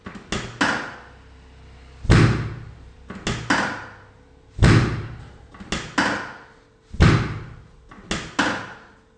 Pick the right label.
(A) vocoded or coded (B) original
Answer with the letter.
B